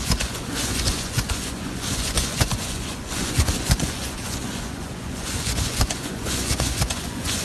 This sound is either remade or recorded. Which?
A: remade